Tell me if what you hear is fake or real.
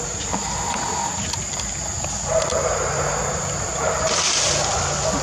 real